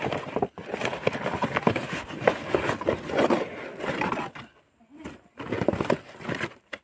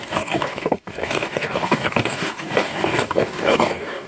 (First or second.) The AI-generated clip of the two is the second